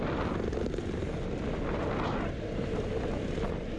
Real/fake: real